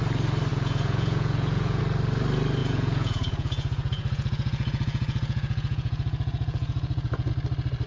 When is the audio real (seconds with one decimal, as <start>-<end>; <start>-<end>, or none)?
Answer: 0.0-0.5; 1.8-2.6; 7.3-7.9